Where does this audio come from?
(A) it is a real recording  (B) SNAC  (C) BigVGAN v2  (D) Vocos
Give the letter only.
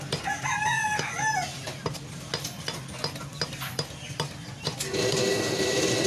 A